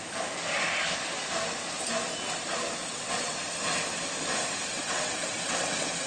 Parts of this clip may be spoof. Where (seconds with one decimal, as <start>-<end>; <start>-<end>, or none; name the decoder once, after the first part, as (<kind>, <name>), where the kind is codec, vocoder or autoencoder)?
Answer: 2.8-3.4 (vocoder, WaveNeXt); 4.7-6.1